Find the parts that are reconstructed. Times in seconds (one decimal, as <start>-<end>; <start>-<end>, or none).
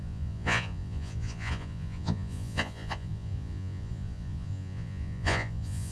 0.0-5.9